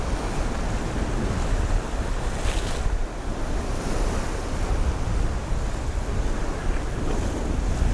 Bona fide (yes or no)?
yes